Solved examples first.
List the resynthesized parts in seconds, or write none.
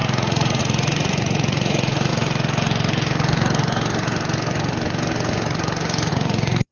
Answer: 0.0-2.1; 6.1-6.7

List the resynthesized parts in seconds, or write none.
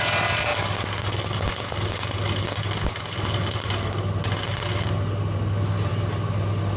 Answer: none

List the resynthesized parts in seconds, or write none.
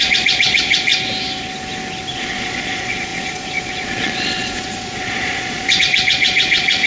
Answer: 0.0-0.9; 2.1-6.9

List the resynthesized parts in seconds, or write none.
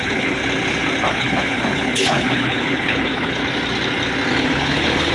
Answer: 0.0-0.4; 1.1-3.4; 4.4-5.1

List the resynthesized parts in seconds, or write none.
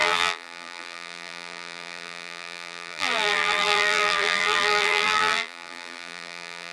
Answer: 0.0-6.7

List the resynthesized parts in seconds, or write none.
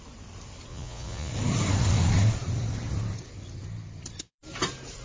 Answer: 0.7-1.3